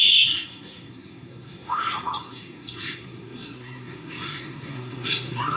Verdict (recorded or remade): remade